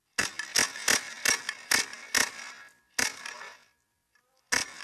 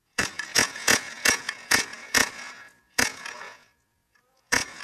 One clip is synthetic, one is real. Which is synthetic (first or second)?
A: second